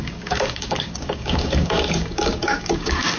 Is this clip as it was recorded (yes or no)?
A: no